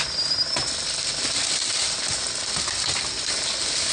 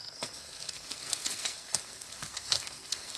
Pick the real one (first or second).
first